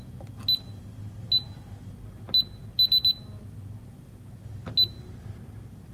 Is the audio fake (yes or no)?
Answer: no